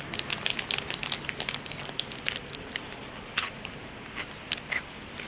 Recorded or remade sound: recorded